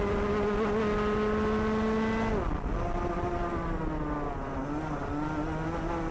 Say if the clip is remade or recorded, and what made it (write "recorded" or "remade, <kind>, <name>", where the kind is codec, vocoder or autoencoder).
recorded